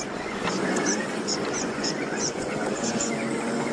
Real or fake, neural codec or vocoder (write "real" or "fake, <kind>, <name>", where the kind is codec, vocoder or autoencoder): fake, vocoder, Vocos